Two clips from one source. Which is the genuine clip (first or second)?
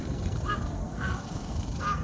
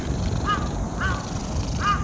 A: second